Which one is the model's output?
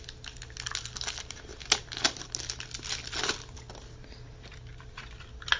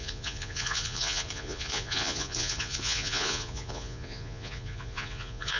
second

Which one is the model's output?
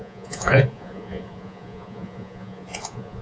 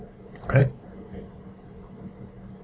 first